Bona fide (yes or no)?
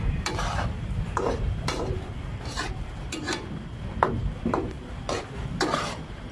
no